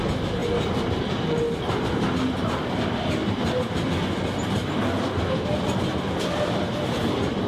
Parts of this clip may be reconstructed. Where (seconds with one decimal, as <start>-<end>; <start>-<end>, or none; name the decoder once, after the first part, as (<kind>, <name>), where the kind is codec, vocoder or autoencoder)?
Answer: none